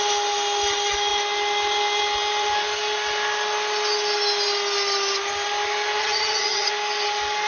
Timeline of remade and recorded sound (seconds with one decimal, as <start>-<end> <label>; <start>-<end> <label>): 0.0-6.0 recorded; 6.0-6.7 remade; 6.7-7.5 recorded